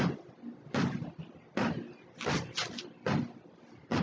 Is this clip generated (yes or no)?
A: no